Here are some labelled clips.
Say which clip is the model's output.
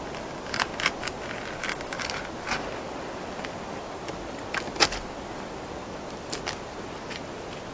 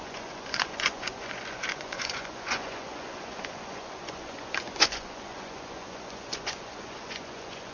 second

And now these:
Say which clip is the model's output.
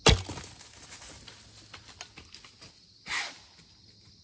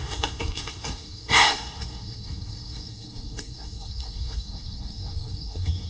second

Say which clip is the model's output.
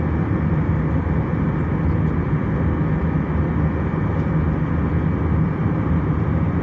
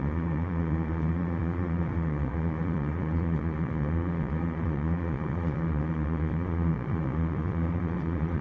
second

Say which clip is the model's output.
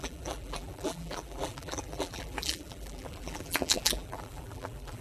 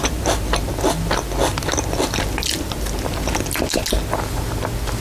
first